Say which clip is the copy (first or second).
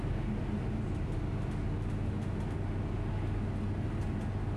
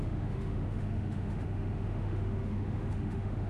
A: second